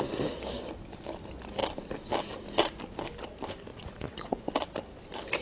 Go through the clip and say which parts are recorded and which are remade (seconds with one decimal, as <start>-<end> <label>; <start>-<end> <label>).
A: 0.0-3.7 recorded; 3.7-4.5 remade; 4.5-5.4 recorded